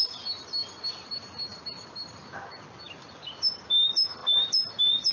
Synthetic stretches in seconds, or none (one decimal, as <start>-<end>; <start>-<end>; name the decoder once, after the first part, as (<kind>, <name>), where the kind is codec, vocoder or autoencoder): none